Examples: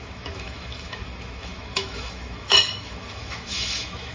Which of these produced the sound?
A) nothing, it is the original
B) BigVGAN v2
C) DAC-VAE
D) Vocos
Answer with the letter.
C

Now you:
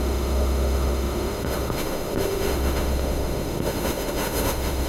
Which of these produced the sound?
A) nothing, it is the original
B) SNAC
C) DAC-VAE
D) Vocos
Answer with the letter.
C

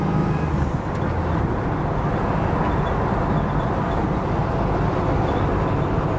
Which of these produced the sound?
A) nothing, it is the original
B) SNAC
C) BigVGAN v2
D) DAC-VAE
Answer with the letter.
A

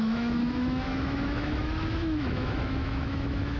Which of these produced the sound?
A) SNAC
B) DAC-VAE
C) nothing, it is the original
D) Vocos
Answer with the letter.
B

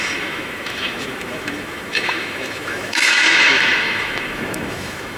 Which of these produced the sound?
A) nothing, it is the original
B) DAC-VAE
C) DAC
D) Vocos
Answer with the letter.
B